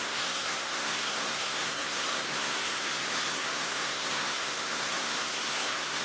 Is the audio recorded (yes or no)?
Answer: no